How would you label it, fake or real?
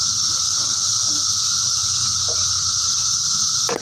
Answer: real